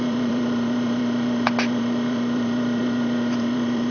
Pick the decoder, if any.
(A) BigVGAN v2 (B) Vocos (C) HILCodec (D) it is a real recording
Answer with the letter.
A